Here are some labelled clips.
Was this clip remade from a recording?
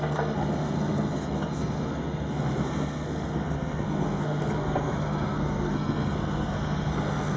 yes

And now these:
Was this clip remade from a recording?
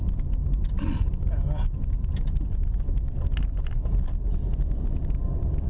no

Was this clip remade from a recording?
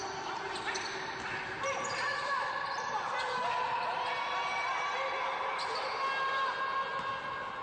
no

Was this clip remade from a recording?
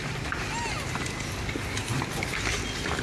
no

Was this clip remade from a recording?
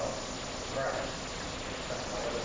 no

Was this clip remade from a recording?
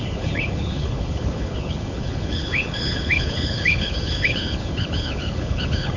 yes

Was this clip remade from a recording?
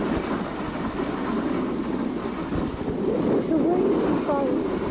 no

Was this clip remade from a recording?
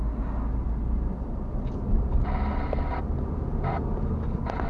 no